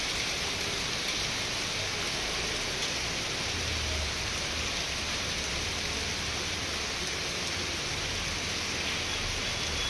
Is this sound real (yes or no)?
yes